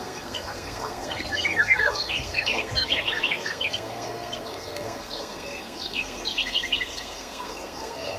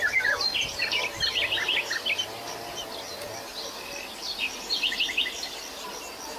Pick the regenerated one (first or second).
first